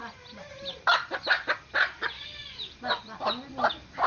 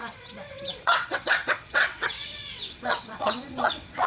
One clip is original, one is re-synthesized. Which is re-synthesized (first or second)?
second